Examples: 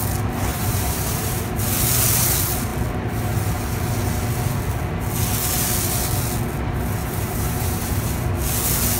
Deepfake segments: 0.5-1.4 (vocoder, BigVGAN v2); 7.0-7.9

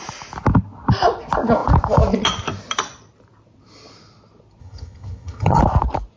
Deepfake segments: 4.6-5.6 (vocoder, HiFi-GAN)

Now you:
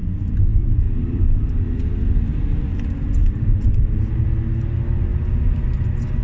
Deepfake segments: 0.5-4.2 (vocoder, BigVGAN v2)

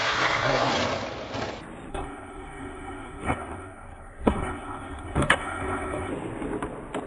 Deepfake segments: 0.0-0.7 (codec, SNAC); 1.9-6.1

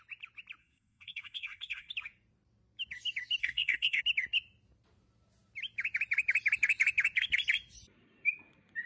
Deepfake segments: 0.6-1.9 (codec, SNAC); 3.4-4.0